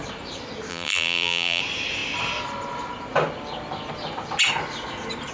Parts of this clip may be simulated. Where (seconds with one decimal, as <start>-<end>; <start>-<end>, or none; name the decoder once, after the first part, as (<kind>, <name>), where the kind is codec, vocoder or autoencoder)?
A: 0.7-1.6 (vocoder, BigVGAN v2)